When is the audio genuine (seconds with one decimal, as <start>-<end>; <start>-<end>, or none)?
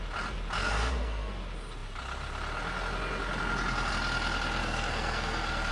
0.0-0.6; 1.4-4.6